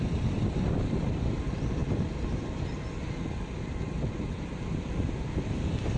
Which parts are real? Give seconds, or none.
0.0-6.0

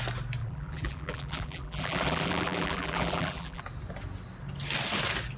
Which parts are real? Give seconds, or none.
0.0-0.4; 3.6-5.4